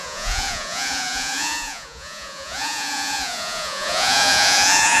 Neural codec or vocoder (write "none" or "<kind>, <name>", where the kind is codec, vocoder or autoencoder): vocoder, Vocos